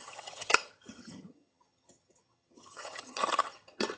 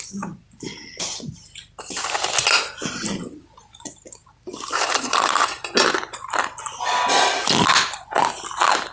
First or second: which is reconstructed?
first